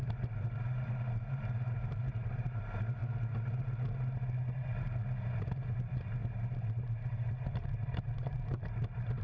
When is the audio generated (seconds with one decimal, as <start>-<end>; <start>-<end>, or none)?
0.0-3.0; 5.4-9.2